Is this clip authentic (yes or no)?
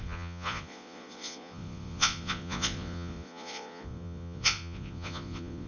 no